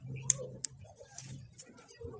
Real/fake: fake